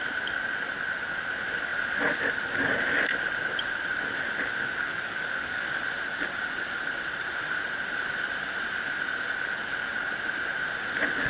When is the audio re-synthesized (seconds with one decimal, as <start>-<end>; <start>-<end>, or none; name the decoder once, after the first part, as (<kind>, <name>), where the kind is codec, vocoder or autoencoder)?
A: 4.9-5.8 (codec, DAC)